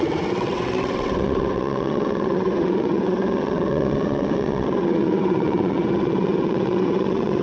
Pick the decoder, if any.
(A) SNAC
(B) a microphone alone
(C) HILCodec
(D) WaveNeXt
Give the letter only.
D